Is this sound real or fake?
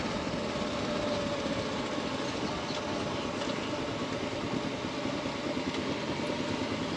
real